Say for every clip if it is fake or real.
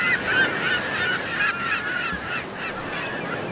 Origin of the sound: real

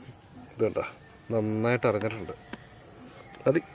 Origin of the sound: real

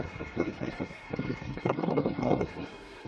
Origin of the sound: fake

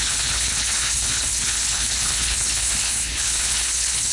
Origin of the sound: fake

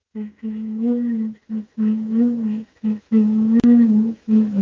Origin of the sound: fake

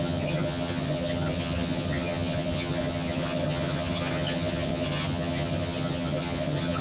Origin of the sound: fake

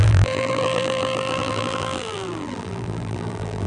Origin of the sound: fake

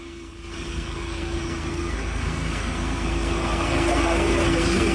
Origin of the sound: fake